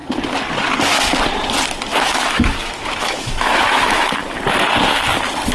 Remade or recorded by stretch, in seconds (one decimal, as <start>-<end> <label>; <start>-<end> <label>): 0.0-2.0 recorded; 2.0-4.2 remade; 4.2-5.5 recorded